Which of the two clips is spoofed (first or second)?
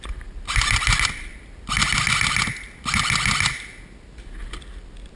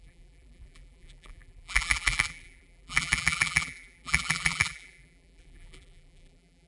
second